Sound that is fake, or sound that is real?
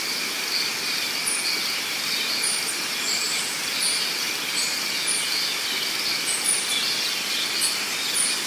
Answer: real